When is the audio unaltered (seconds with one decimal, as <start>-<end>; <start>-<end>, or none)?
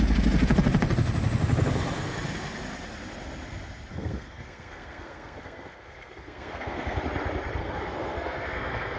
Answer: 0.0-3.9; 7.0-7.6